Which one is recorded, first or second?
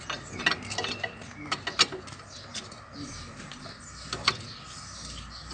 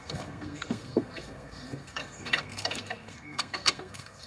first